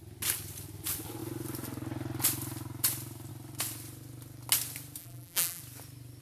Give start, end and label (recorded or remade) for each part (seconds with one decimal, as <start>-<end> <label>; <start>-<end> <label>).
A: 0.0-5.0 recorded; 5.0-5.6 remade; 5.6-6.2 recorded